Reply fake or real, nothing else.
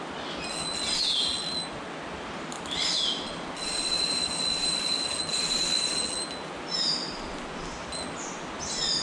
real